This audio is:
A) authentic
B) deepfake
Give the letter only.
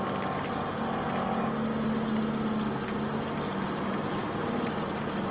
A